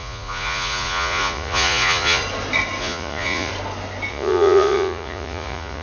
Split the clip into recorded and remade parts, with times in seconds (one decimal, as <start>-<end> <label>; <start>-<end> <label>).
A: 0.0-2.2 remade; 2.2-2.8 recorded; 2.8-3.5 remade; 3.5-4.1 recorded; 4.1-5.8 remade